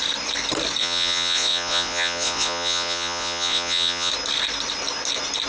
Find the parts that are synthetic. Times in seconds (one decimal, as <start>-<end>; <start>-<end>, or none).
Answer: 0.8-4.1